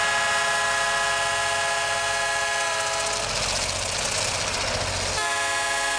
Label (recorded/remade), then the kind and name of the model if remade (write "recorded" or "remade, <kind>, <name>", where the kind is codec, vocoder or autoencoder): recorded